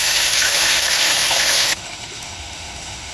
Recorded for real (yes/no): no